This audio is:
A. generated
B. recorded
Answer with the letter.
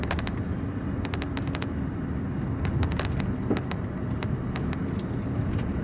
B